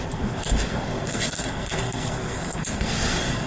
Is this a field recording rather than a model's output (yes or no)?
no